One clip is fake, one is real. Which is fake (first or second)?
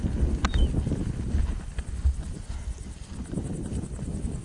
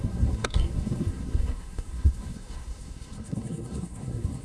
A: second